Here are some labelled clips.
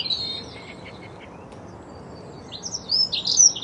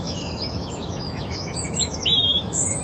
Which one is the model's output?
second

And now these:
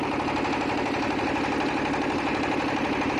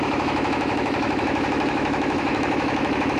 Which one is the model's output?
second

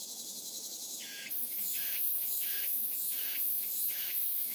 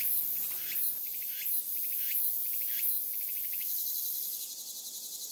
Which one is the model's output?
first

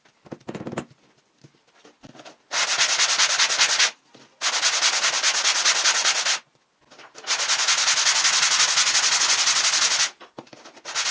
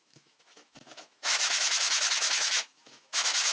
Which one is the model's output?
second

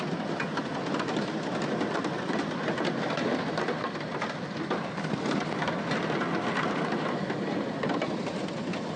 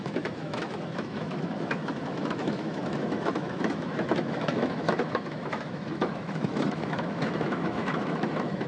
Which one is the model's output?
second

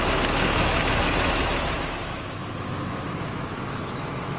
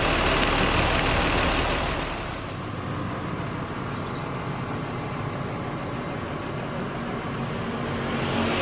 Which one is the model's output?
first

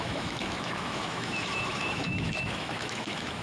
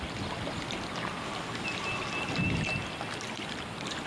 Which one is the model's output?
first